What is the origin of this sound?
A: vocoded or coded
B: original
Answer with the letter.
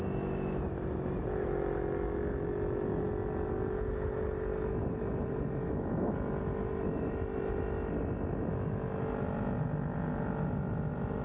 B